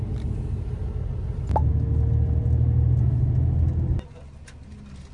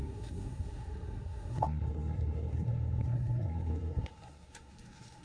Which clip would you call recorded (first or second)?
first